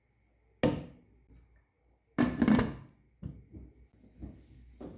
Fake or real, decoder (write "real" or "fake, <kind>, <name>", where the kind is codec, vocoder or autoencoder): real